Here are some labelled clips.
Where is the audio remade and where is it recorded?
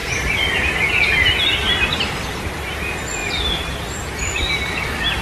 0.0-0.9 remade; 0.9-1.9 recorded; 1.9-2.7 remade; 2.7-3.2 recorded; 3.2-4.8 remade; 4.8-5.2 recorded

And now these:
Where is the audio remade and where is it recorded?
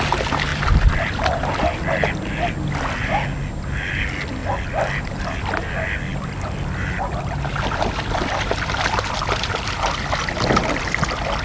0.0-0.5 recorded; 0.5-1.0 remade; 1.0-4.4 recorded; 4.4-5.6 remade; 5.6-6.1 recorded; 6.1-9.5 remade; 9.5-11.4 recorded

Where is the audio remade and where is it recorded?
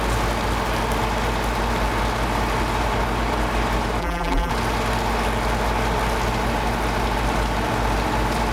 0.0-4.0 recorded; 4.0-4.5 remade; 4.5-8.5 recorded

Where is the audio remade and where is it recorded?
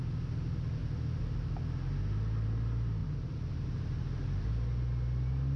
0.0-3.0 recorded; 3.0-4.5 remade; 4.5-5.6 recorded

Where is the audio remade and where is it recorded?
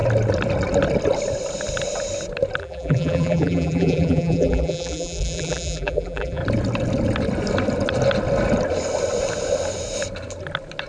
0.0-2.6 recorded; 2.6-6.4 remade; 6.4-10.9 recorded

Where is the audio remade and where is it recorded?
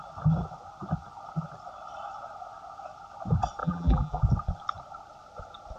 0.0-3.6 recorded; 3.6-4.2 remade; 4.2-5.8 recorded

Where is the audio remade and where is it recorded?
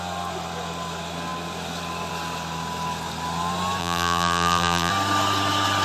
0.0-3.8 recorded; 3.8-4.9 remade; 4.9-5.8 recorded